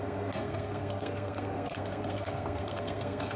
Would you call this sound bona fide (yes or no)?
no